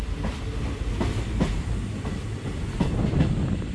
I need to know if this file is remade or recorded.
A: recorded